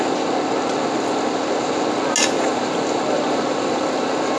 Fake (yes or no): no